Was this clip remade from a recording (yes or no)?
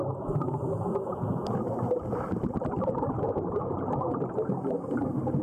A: yes